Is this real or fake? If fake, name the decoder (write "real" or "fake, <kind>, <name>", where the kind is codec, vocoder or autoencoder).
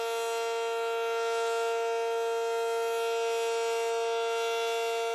real